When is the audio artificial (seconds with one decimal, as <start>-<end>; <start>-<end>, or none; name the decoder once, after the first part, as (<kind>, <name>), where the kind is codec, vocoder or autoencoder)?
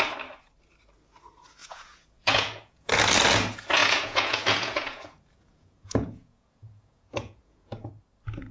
1.6-2.9 (vocoder, Vocos); 3.8-7.9